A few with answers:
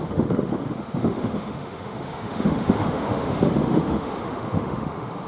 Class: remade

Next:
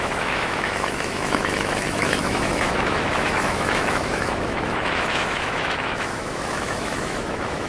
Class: remade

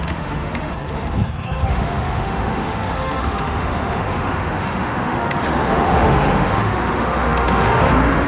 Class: remade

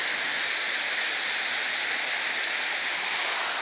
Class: recorded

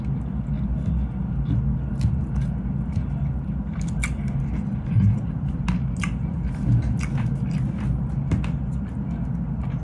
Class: recorded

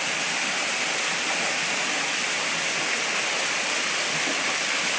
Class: recorded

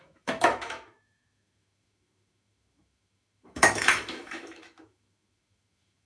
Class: remade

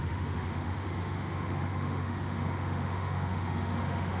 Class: remade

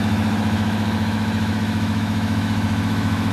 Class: remade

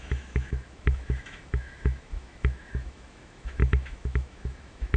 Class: remade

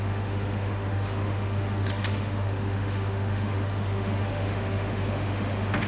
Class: remade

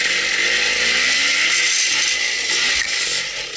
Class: recorded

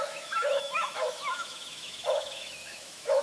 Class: remade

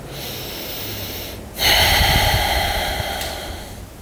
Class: recorded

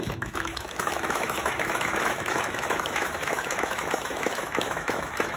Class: remade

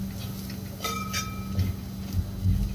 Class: recorded